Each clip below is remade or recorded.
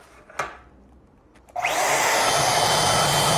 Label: recorded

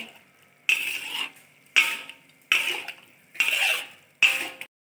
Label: recorded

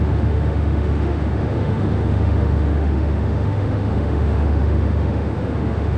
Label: remade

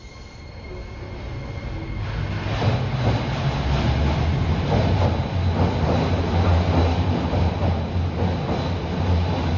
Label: recorded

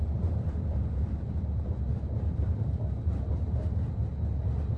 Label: recorded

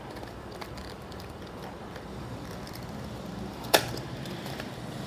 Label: remade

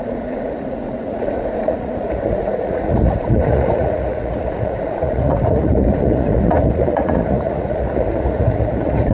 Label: remade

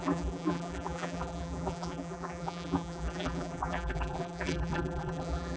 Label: remade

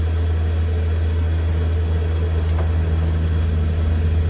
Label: recorded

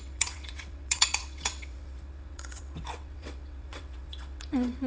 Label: remade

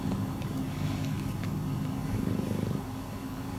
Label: remade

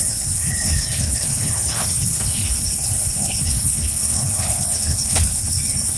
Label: remade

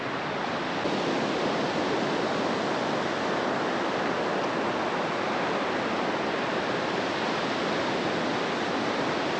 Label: recorded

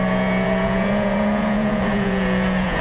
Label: remade